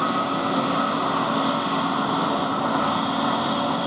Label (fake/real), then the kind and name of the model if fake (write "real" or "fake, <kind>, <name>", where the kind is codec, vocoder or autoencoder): real